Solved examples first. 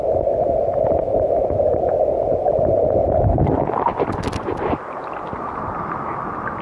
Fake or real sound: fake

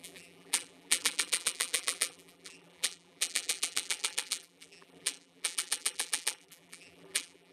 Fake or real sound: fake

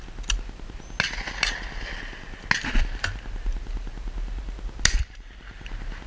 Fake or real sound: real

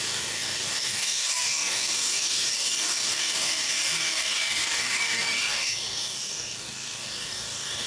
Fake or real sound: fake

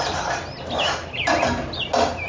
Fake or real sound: real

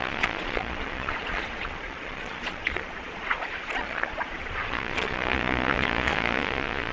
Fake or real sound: fake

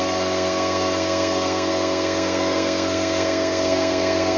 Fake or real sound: fake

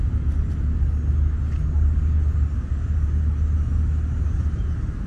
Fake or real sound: real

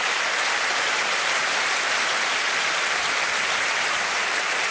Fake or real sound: fake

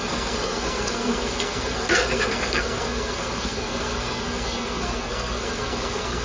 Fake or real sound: fake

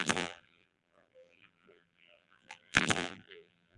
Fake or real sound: fake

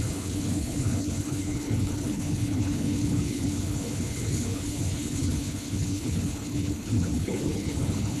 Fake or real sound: fake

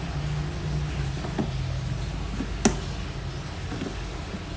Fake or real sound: real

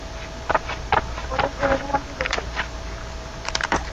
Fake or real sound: fake